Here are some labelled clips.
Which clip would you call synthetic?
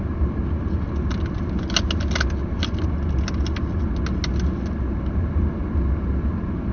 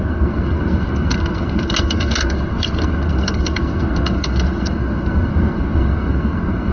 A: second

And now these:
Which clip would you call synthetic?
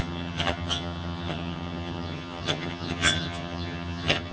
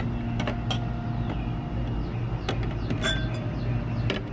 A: first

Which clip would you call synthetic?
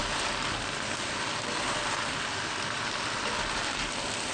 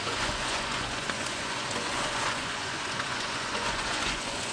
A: second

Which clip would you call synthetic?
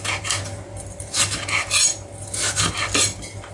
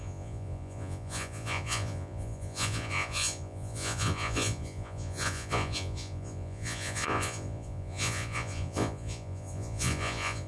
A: second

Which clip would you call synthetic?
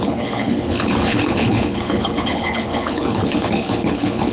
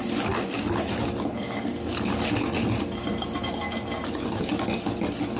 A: first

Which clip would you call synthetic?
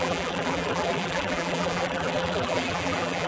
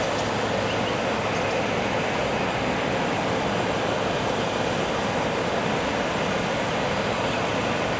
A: first